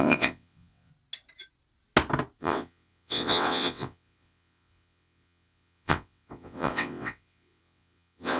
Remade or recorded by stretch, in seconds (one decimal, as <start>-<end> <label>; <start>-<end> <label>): 0.0-0.9 remade; 0.9-2.4 recorded; 2.4-8.4 remade